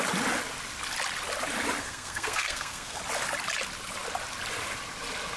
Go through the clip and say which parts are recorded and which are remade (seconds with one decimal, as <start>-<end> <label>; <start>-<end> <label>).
0.0-1.8 recorded; 1.8-3.0 remade; 3.0-5.4 recorded